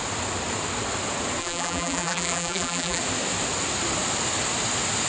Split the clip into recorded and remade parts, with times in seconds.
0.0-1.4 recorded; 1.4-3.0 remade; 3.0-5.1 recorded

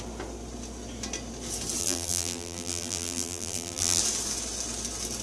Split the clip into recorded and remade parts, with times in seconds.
0.0-1.8 recorded; 1.8-4.0 remade; 4.0-5.2 recorded

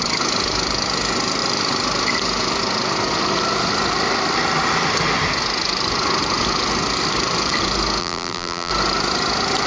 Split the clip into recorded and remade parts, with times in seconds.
0.0-8.0 recorded; 8.0-8.7 remade; 8.7-9.7 recorded

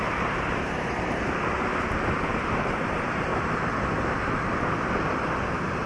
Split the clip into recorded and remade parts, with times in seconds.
0.0-1.7 remade; 1.7-2.5 recorded; 2.5-3.3 remade; 3.3-5.4 recorded; 5.4-5.9 remade

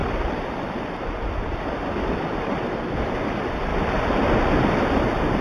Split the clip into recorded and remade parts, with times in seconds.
0.0-3.2 remade; 3.2-5.4 recorded

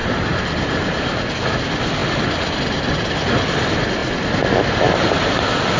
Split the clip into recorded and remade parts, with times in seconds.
0.0-1.3 remade; 1.3-5.8 recorded

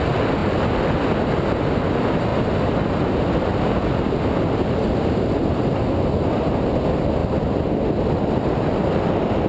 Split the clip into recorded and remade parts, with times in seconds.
0.0-9.5 recorded

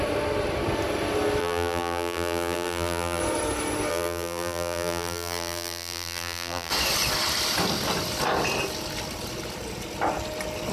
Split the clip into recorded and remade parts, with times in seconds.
0.0-1.4 recorded; 1.4-3.2 remade; 3.2-3.9 recorded; 3.9-6.7 remade; 6.7-10.7 recorded